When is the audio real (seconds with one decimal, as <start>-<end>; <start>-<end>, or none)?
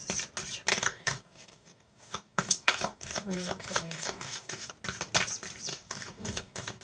0.0-0.7; 4.7-5.7